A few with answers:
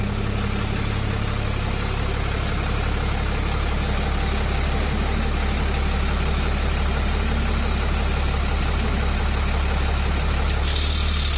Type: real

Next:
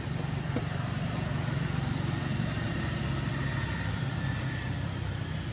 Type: real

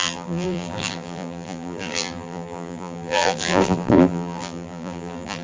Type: fake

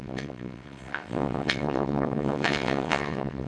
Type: fake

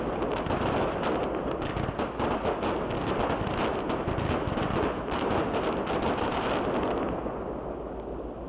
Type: real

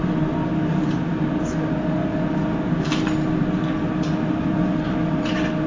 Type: real